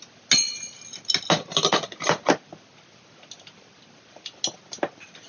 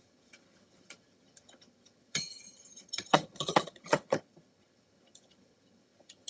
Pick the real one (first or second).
first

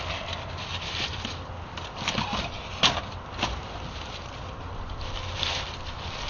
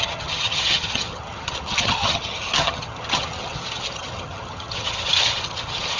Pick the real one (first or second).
first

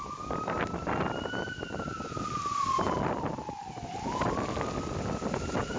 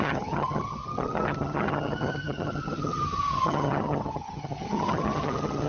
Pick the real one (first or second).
first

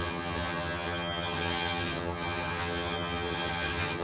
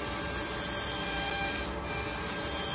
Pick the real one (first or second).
second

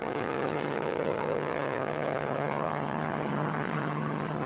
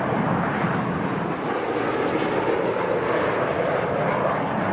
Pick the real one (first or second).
second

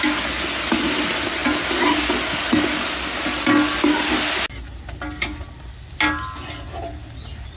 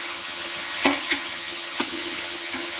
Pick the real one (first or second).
first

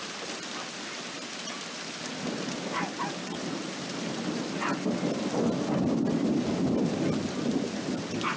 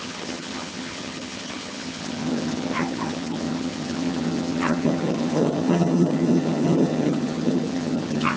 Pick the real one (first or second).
first